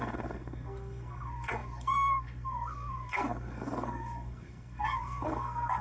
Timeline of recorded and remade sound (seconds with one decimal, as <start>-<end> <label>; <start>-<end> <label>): 0.0-5.8 remade